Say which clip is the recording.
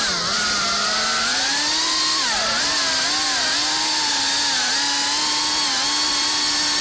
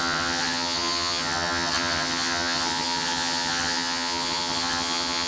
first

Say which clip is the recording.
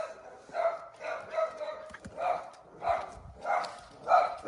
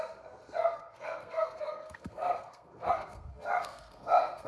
first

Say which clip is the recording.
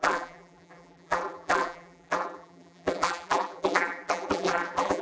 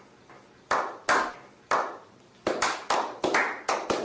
second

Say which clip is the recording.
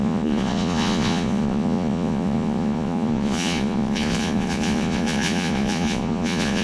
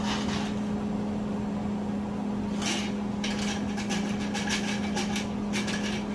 second